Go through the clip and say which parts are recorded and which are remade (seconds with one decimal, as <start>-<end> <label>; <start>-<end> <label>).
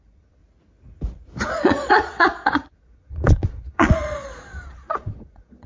0.0-0.4 remade; 0.4-1.5 recorded; 1.5-5.7 remade